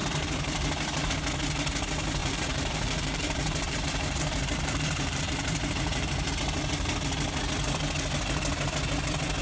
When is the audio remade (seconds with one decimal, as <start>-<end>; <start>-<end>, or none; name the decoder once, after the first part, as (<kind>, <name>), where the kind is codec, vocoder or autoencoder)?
0.0-1.1 (vocoder, BigVGAN v2); 2.2-6.3